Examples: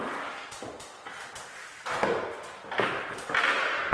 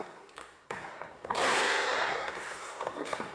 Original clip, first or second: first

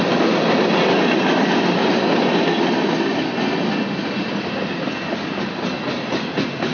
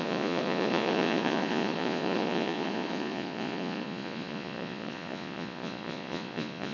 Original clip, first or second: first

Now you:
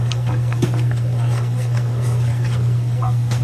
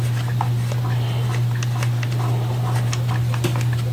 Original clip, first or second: second